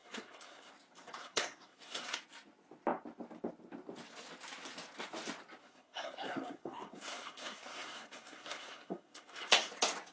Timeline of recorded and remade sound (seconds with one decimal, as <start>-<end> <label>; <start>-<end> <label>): 0.0-0.7 remade; 0.7-1.2 recorded; 1.2-2.2 remade; 2.2-5.6 recorded; 5.6-9.7 remade; 9.7-10.1 recorded